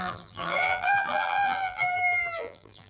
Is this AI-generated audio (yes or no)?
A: yes